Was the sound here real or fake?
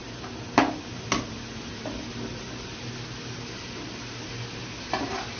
real